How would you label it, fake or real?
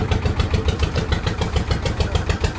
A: fake